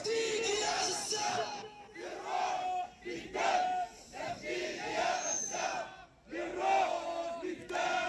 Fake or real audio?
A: real